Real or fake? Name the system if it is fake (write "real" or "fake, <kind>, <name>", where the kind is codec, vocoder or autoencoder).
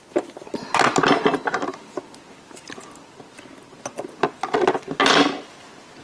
real